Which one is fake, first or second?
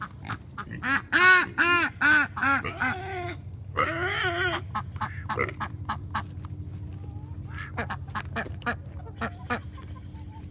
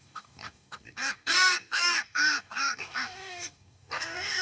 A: second